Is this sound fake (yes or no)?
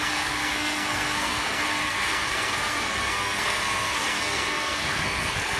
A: yes